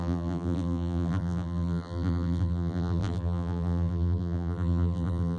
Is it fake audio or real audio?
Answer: fake